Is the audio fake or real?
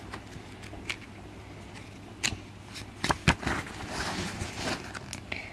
real